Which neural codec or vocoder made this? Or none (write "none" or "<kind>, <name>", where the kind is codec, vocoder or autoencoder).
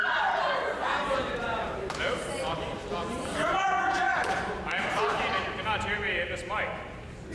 vocoder, BigVGAN v2